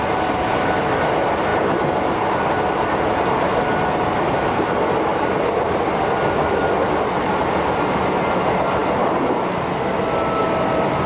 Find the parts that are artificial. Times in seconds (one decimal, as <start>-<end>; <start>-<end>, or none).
none